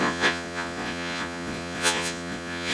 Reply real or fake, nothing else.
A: fake